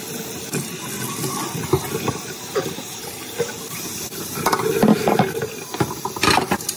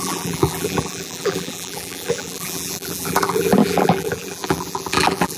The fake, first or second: second